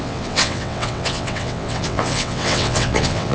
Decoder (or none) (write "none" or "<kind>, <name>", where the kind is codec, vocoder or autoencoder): vocoder, WaveNeXt